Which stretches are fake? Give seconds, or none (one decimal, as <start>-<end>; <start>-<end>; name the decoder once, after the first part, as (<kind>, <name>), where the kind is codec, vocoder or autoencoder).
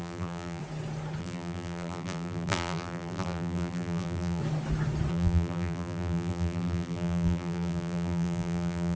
0.0-0.6 (vocoder, BigVGAN v2); 1.2-4.4; 5.1-9.0